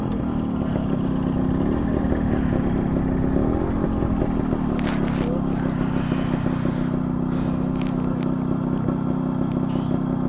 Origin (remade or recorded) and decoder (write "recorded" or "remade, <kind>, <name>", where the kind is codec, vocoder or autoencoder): recorded